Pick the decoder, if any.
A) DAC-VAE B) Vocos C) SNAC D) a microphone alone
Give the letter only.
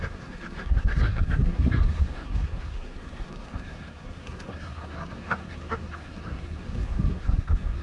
C